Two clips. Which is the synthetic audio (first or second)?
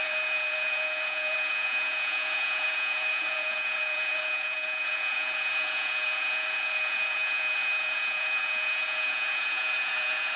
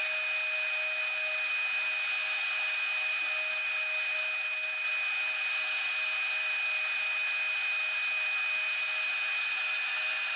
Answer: first